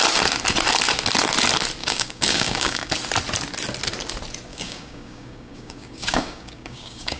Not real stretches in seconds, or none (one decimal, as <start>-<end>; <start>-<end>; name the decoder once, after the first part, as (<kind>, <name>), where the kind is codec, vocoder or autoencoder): 1.8-2.9 (codec, DAC); 4.5-7.2